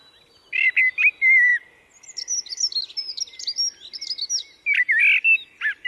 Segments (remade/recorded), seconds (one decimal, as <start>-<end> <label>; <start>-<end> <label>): 0.0-5.9 recorded